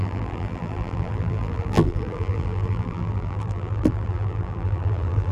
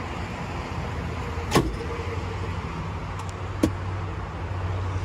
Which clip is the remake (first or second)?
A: first